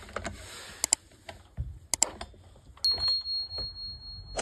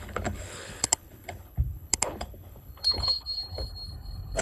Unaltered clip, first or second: first